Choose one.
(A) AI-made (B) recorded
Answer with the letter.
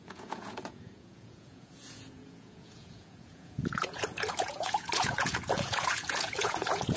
A